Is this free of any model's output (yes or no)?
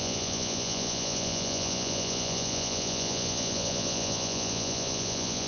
no